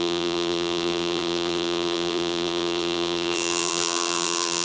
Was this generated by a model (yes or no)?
yes